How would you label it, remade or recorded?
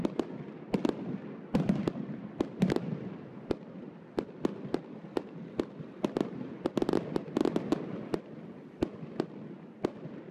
recorded